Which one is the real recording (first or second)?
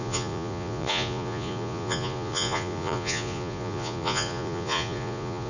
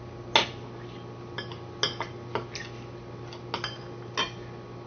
second